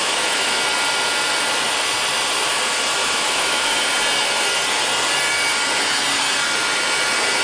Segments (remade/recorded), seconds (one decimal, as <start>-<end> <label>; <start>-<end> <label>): 0.0-0.6 remade; 0.6-3.0 recorded; 3.0-3.9 remade; 3.9-7.4 recorded